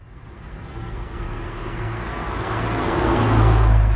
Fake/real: fake